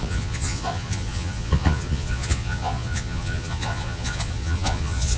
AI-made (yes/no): yes